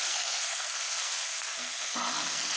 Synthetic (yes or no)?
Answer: yes